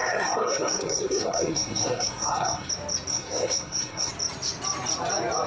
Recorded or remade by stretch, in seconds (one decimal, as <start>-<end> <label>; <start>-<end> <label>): 0.0-2.7 remade; 2.7-3.1 recorded; 3.1-4.1 remade; 4.1-5.5 recorded